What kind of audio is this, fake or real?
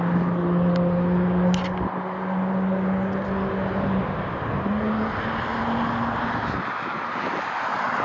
real